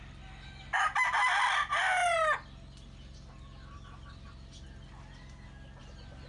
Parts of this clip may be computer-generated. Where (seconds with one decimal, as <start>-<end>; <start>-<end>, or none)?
none